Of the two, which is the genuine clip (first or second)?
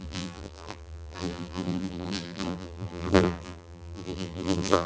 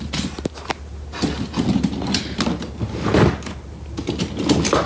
second